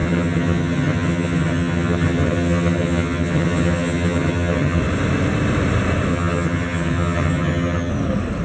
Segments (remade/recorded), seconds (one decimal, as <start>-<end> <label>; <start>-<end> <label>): 0.0-4.8 remade; 4.8-6.1 recorded; 6.1-7.9 remade; 7.9-8.4 recorded